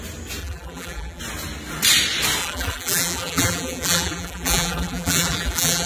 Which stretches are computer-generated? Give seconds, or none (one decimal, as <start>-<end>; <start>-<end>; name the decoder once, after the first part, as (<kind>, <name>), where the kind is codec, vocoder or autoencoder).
0.4-1.2 (vocoder, BigVGAN v2); 2.4-5.9